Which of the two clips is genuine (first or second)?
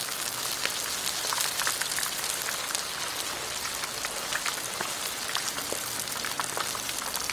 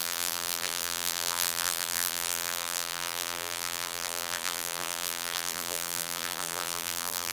first